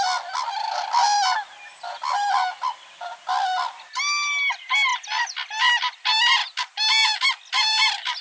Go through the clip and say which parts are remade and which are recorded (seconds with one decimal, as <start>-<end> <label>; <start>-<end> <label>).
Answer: 0.0-8.2 recorded